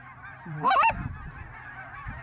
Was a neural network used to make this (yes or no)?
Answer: yes